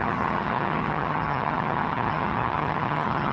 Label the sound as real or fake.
fake